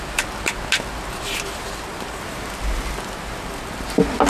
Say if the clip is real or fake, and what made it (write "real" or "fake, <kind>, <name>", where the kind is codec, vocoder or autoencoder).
real